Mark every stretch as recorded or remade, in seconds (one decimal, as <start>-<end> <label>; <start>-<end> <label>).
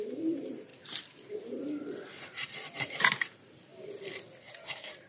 0.0-0.7 remade; 0.7-1.3 recorded; 1.3-3.7 remade; 3.7-4.5 recorded; 4.5-5.1 remade